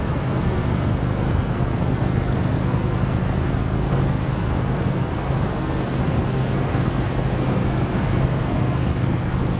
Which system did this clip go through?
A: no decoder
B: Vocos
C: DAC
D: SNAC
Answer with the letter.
D